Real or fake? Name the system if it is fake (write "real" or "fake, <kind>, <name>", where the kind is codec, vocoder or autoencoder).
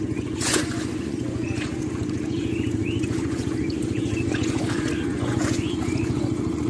fake, vocoder, Vocos